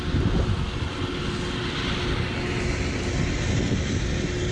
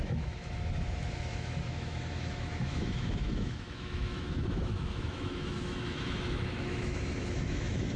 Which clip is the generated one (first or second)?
second